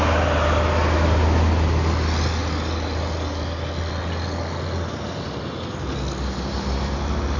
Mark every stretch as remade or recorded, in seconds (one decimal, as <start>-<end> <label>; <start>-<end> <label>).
0.0-7.4 recorded